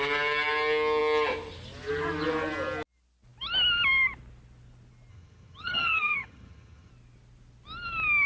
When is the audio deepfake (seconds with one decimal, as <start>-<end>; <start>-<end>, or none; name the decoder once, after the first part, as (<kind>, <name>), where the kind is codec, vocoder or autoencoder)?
5.1-6.9 (vocoder, HiFi-GAN)